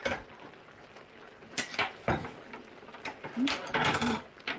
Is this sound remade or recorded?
recorded